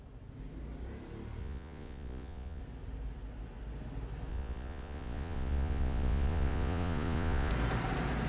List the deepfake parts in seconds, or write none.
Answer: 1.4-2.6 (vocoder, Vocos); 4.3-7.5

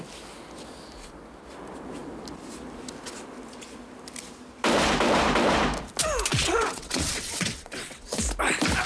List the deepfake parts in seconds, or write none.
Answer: 6.3-8.2 (vocoder, WaveNeXt)

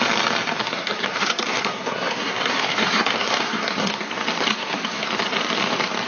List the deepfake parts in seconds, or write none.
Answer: 0.6-4.1 (codec, SNAC); 4.5-5.1

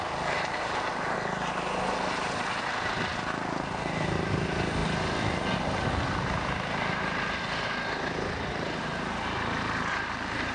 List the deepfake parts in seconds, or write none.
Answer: none

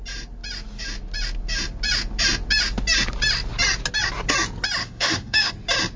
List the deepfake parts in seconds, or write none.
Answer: 4.8-5.5 (autoencoder, DAC-VAE)